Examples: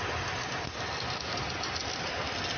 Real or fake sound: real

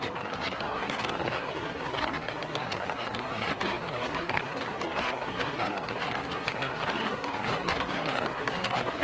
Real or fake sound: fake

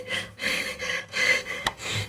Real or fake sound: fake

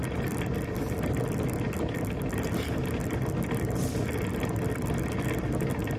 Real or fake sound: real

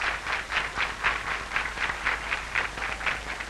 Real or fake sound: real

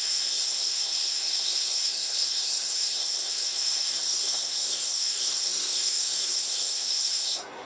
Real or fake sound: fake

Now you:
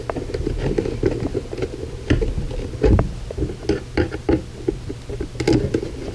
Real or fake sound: real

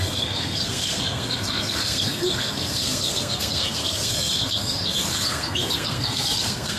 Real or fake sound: fake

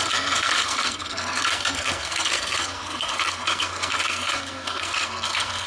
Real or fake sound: fake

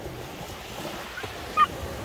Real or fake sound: real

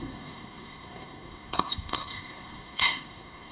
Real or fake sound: fake